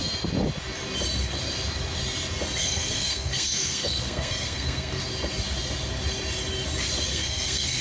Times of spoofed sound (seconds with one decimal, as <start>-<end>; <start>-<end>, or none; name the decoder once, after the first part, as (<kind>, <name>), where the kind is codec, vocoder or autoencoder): 2.6-5.0 (codec, SNAC); 7.1-7.8